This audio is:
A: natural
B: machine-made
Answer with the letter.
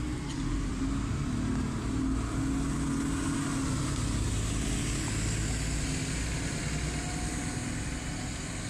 A